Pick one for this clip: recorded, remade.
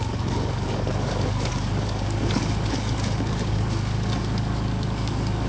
remade